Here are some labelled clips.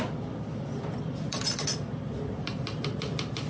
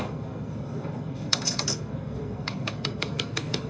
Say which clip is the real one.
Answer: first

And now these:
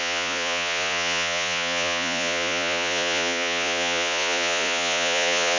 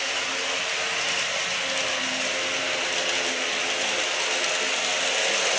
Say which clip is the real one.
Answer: second